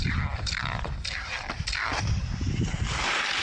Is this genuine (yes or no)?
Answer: yes